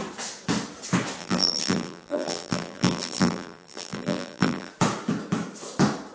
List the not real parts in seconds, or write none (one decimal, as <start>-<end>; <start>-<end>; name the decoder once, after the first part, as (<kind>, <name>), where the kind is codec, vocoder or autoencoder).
1.2-4.7 (vocoder, BigVGAN v2)